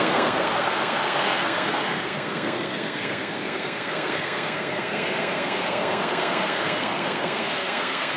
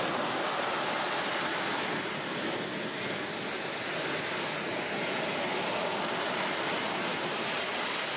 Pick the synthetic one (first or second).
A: first